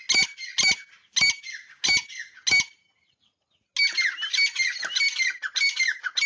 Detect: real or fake real